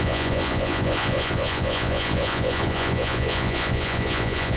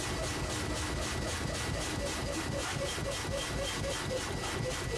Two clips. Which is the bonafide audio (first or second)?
second